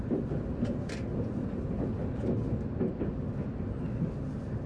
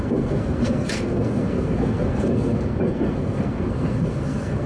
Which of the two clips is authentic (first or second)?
first